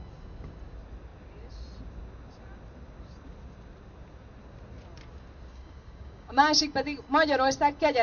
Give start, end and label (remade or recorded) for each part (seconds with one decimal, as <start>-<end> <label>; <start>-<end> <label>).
0.0-5.5 recorded; 5.5-6.4 remade; 6.4-8.0 recorded